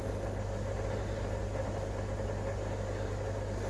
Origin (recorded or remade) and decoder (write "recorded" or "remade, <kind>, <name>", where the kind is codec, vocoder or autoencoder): recorded